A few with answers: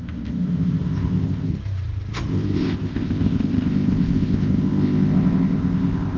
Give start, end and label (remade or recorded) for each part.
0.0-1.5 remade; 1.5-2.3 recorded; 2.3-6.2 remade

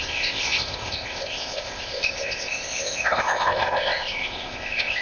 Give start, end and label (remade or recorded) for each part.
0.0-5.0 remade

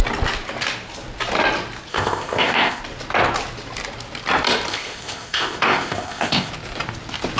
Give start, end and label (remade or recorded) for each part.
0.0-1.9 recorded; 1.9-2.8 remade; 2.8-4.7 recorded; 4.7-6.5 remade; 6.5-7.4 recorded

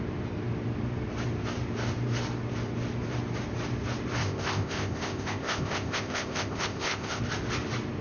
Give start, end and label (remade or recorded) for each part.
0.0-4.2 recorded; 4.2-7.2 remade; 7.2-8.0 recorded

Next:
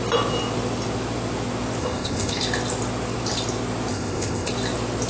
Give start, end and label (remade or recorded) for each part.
0.0-1.8 recorded; 1.8-2.4 remade; 2.4-3.9 recorded; 3.9-4.5 remade; 4.5-5.1 recorded

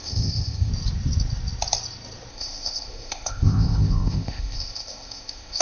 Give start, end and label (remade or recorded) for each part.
0.0-0.7 remade; 0.7-2.3 recorded; 2.3-5.6 remade

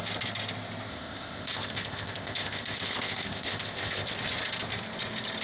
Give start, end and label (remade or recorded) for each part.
0.0-0.9 recorded; 0.9-4.1 remade; 4.1-5.4 recorded

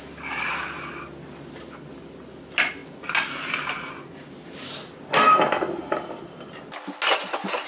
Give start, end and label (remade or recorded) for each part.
0.0-7.7 recorded